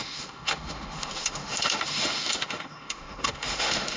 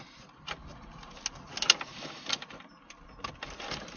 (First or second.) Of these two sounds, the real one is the second